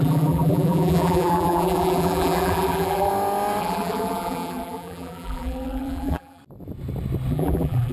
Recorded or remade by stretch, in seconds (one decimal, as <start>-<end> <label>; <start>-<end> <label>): 0.0-3.1 remade; 3.1-3.6 recorded; 3.6-6.4 remade; 6.4-7.3 recorded; 7.3-7.9 remade